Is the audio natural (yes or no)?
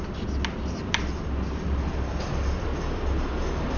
yes